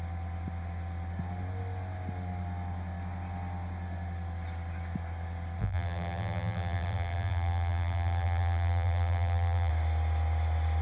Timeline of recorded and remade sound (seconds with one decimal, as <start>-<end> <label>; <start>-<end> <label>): 0.0-5.6 recorded; 5.6-9.7 remade; 9.7-10.8 recorded